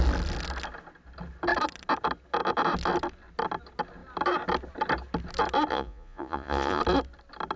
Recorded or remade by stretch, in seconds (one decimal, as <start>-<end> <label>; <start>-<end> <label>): 0.0-5.7 recorded; 5.7-6.8 remade; 6.8-7.6 recorded

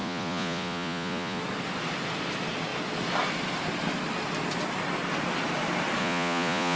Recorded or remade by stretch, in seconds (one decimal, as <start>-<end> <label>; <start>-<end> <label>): 0.0-1.4 remade; 1.4-6.0 recorded; 6.0-6.8 remade

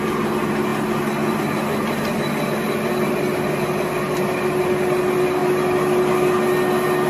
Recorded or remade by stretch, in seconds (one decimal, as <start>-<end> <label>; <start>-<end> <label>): 0.0-7.1 recorded

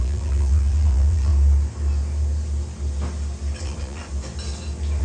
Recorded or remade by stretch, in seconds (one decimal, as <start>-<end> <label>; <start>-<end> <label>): 0.0-1.3 remade; 1.3-3.6 recorded; 3.6-4.1 remade; 4.1-5.0 recorded

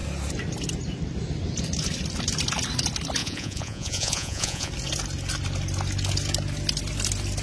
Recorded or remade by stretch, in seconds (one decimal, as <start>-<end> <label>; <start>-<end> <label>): 0.0-3.2 recorded; 3.2-4.7 remade; 4.7-7.4 recorded

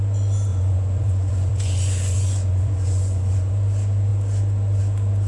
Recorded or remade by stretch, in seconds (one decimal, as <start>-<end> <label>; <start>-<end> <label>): 0.0-0.5 recorded; 0.5-3.5 remade; 3.5-5.3 recorded

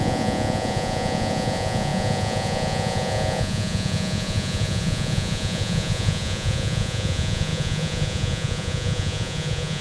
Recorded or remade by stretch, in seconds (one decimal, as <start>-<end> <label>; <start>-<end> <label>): 0.0-9.8 remade